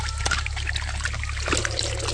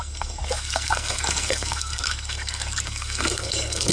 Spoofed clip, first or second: second